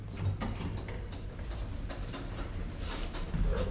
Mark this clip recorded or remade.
recorded